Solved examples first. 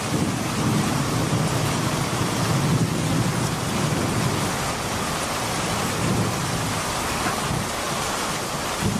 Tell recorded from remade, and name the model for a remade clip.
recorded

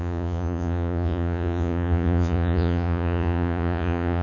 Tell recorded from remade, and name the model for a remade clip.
remade, vocoder, Vocos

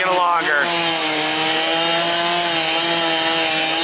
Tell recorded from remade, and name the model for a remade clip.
recorded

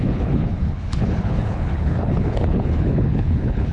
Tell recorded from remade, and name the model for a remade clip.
remade, codec, HILCodec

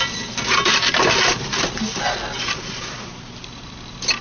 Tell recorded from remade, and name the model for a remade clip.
recorded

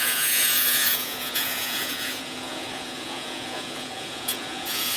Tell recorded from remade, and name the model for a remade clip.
remade, vocoder, Vocos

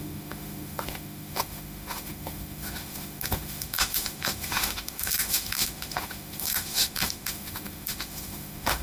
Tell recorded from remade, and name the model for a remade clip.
remade, autoencoder, DAC-VAE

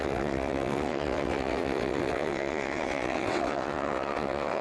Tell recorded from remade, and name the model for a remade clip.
remade, vocoder, WaveNeXt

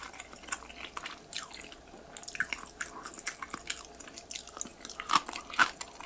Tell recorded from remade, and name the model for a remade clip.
recorded